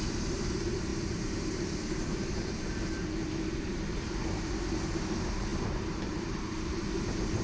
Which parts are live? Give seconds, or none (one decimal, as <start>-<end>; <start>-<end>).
none